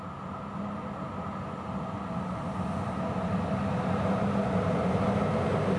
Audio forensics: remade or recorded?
recorded